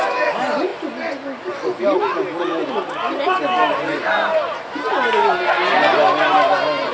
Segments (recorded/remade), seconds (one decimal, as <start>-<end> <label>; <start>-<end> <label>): 0.0-6.9 recorded